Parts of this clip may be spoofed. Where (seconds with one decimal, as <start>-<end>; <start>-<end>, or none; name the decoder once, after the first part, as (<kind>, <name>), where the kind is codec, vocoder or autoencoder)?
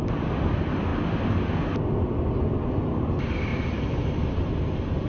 3.5-5.1 (vocoder, BigVGAN v2)